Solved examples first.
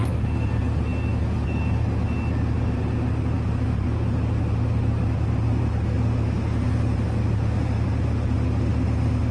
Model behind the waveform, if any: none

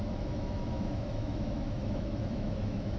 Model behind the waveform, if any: autoencoder, DAC-VAE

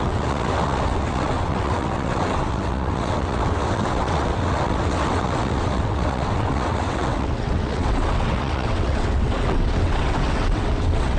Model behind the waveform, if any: vocoder, WaveNeXt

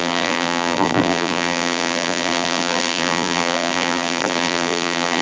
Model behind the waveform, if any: vocoder, BigVGAN v2